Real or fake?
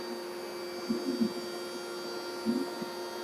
real